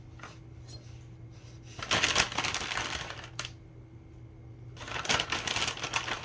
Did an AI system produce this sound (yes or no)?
no